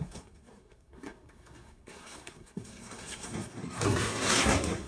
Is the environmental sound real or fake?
fake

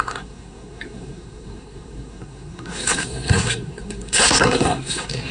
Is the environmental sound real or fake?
fake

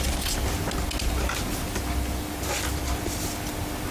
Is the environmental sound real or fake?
real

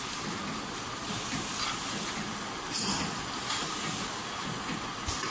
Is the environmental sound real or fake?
real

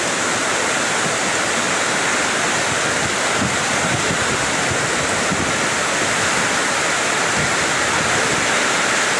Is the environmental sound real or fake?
real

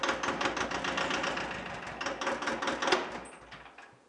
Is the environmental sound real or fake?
real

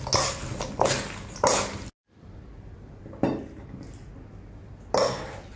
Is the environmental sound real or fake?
real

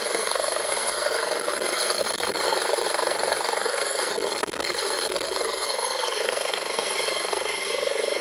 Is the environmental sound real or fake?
fake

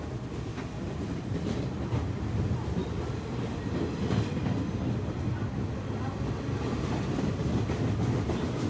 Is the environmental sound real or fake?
real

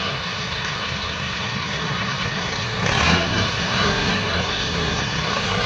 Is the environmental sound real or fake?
fake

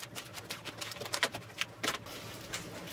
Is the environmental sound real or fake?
real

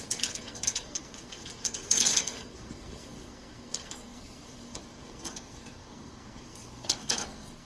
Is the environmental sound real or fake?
fake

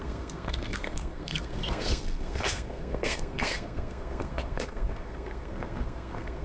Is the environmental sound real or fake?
fake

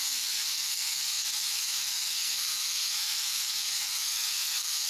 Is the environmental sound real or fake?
fake